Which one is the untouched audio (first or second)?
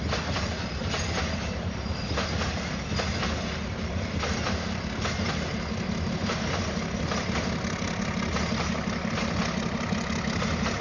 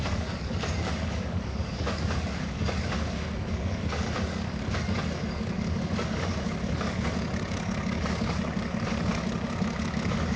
first